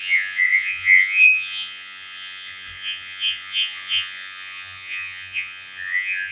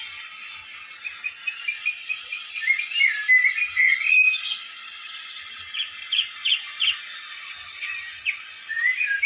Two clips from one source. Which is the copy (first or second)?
first